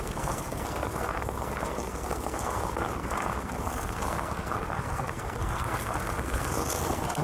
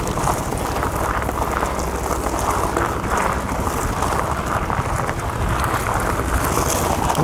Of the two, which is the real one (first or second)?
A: second